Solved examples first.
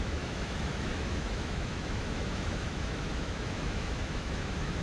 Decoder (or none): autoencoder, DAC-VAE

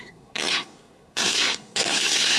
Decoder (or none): codec, SNAC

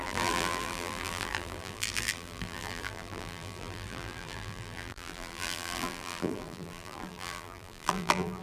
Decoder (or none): vocoder, BigVGAN v2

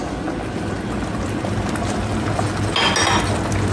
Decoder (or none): none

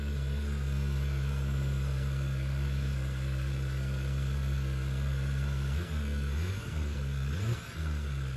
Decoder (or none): codec, SNAC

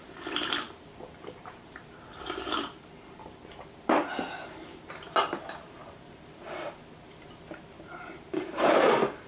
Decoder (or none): vocoder, BigVGAN v2